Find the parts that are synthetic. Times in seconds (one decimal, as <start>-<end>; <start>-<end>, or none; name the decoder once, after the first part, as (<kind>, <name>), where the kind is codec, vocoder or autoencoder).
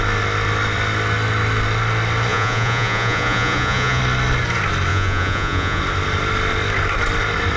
2.3-4.0 (vocoder, Vocos); 4.9-5.8